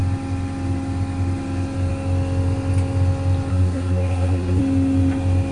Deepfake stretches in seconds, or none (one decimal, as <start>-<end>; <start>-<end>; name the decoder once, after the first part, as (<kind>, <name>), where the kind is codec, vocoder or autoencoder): 3.5-4.6 (codec, SNAC)